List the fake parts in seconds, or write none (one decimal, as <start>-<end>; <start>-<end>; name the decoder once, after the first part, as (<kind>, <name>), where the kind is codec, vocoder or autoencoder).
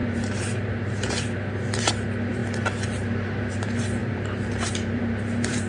0.0-2.4 (vocoder, BigVGAN v2); 3.0-5.7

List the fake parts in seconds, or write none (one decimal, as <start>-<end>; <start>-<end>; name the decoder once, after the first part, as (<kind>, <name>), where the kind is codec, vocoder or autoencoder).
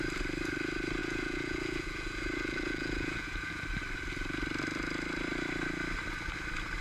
1.0-3.6 (vocoder, Vocos)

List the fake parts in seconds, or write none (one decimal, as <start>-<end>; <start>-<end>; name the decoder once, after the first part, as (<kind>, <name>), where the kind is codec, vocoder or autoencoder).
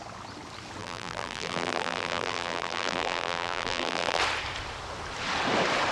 0.8-4.2 (vocoder, BigVGAN v2)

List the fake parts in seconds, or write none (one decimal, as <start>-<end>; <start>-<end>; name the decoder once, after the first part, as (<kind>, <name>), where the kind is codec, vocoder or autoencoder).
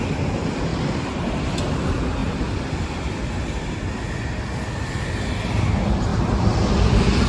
0.7-1.5 (vocoder, BigVGAN v2); 2.2-3.7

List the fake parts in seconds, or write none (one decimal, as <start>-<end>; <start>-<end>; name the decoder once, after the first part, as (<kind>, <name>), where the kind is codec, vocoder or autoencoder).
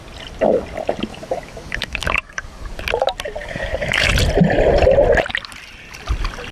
1.1-2.8 (codec, DAC); 3.4-4.1